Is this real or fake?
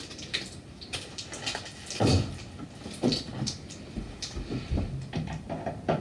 real